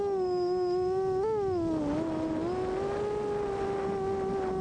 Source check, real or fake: real